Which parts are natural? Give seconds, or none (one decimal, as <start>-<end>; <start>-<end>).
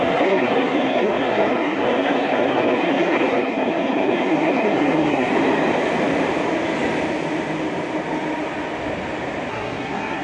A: 5.3-9.5